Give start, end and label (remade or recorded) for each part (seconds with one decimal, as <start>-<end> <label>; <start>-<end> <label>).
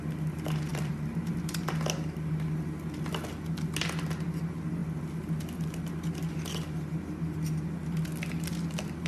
0.0-0.7 recorded; 0.7-1.7 remade; 1.7-9.1 recorded